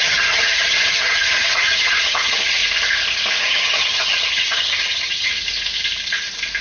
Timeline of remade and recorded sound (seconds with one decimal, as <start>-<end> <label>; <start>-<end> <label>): 0.0-2.6 remade; 2.6-3.4 recorded; 3.4-5.3 remade; 5.3-6.6 recorded